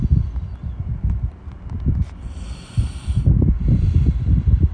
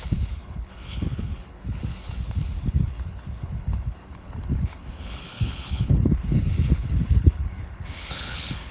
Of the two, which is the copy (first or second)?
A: second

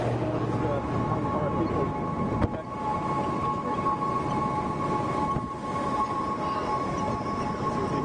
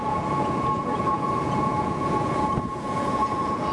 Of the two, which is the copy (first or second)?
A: second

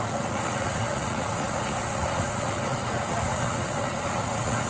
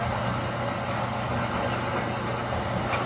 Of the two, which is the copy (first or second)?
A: first